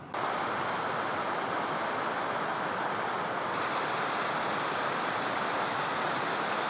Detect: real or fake real